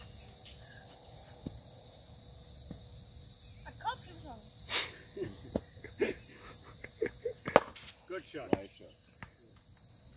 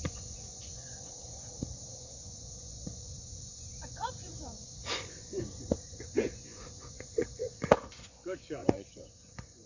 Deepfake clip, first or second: second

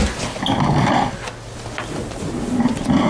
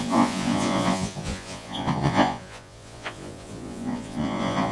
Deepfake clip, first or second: second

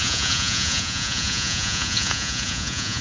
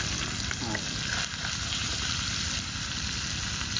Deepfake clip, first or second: first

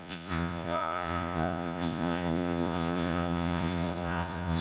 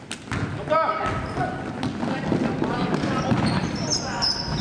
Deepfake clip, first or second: first